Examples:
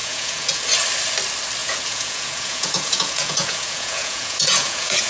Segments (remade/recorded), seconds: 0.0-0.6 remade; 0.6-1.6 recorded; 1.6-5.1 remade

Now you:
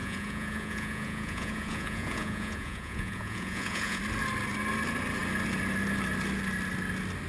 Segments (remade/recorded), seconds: 0.0-4.0 remade; 4.0-7.3 recorded

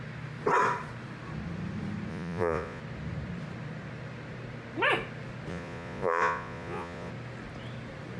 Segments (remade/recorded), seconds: 0.0-2.1 recorded; 2.1-2.8 remade; 2.8-5.5 recorded; 5.5-7.1 remade; 7.1-8.2 recorded

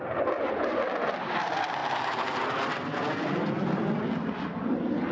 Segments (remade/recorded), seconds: 0.0-5.1 recorded